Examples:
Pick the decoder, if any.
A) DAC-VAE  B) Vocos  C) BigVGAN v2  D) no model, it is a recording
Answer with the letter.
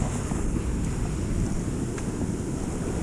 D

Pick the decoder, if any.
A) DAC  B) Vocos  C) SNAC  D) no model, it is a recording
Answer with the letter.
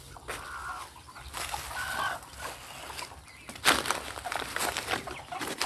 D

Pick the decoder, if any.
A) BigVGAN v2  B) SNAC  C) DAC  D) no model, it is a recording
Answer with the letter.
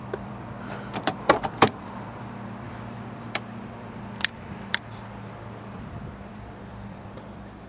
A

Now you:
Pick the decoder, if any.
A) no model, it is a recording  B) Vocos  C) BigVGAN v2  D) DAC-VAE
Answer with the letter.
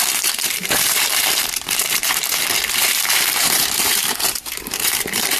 C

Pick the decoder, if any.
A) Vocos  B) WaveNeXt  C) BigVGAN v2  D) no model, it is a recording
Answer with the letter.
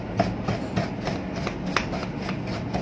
D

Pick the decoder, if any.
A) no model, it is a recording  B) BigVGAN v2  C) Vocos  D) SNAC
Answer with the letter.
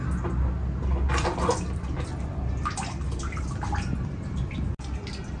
A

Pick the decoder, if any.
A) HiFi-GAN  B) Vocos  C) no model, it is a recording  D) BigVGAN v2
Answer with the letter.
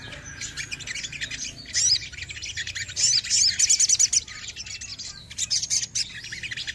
C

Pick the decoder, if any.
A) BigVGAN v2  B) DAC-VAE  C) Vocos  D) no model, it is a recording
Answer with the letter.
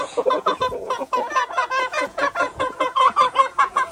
C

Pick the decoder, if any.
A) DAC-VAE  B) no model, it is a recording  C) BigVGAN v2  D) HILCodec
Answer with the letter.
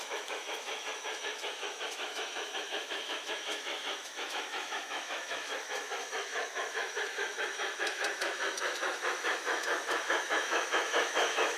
A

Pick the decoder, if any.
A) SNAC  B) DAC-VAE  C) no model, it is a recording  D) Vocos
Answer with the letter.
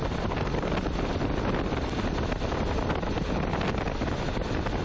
C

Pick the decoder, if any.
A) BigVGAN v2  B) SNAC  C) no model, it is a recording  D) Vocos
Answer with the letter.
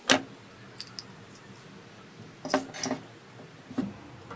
C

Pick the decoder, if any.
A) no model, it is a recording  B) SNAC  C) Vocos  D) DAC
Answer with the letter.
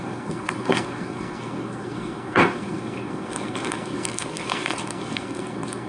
B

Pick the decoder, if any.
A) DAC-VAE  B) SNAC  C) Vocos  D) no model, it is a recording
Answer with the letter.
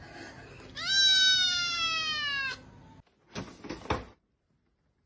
D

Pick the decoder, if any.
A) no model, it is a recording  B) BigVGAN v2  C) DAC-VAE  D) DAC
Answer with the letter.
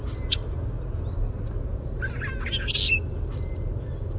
A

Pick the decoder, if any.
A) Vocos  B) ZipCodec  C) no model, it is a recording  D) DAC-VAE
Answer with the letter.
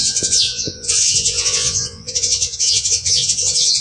A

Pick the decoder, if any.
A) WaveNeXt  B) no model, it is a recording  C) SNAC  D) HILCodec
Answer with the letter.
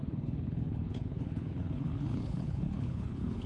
D